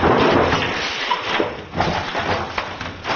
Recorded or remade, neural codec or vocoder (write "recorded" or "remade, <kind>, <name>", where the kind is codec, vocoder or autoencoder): recorded